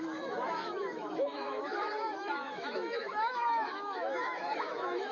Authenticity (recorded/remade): remade